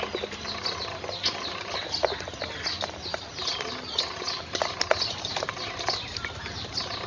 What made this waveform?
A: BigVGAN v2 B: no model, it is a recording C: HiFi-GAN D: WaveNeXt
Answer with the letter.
B